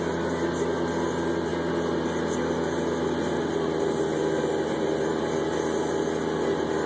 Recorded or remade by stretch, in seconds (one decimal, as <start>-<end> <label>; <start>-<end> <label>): 0.0-6.9 recorded